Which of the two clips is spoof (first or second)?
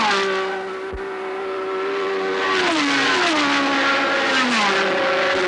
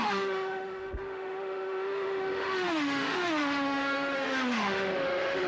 second